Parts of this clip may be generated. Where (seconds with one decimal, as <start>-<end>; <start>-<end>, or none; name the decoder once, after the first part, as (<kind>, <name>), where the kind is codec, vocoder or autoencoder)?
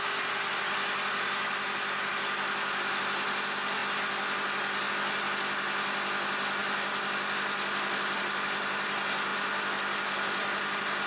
none